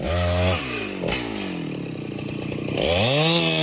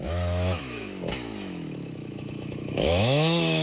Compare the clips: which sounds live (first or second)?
first